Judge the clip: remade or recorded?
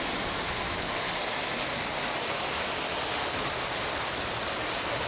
recorded